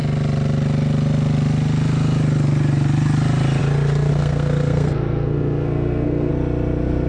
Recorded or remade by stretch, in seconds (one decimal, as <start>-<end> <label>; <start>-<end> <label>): 0.0-4.1 recorded; 4.1-6.3 remade; 6.3-7.1 recorded

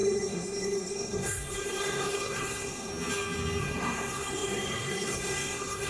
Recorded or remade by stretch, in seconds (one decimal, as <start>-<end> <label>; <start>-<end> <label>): 0.0-2.9 remade; 2.9-3.6 recorded; 3.6-5.9 remade

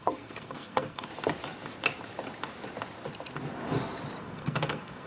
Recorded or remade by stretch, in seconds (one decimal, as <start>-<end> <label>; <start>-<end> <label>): 0.0-1.1 remade; 1.1-4.2 recorded; 4.2-5.1 remade

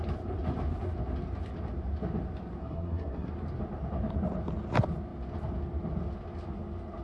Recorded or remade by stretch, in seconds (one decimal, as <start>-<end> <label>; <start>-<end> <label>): 0.0-2.6 recorded; 2.6-3.3 remade; 3.3-7.0 recorded

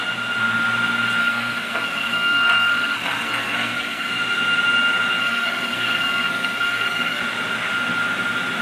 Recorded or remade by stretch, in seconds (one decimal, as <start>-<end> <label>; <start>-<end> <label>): 0.0-1.2 recorded; 1.2-4.1 remade; 4.1-5.2 recorded; 5.2-7.2 remade; 7.2-8.6 recorded

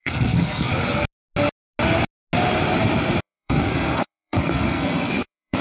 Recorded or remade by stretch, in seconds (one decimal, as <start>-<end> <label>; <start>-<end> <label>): 0.0-0.7 remade; 0.7-3.2 recorded; 3.2-5.6 remade